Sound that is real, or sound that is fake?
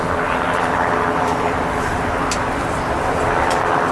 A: real